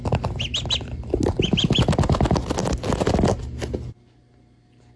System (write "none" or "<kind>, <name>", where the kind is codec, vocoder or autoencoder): none